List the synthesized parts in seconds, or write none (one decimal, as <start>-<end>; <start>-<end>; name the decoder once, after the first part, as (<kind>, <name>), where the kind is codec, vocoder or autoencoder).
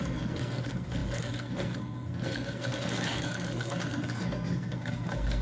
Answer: 0.0-5.4 (codec, SNAC)